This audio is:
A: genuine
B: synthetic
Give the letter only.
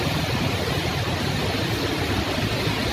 A